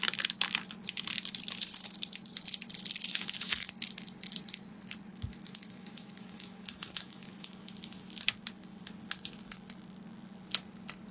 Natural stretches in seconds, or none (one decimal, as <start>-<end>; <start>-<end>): 0.0-3.1; 3.7-5.1; 7.7-11.1